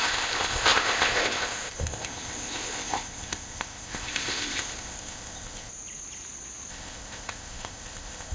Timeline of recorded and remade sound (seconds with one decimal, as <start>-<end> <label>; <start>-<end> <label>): 0.0-5.7 remade; 5.7-6.7 recorded; 6.7-8.3 remade